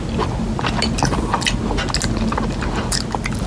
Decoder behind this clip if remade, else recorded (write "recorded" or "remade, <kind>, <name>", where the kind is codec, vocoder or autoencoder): recorded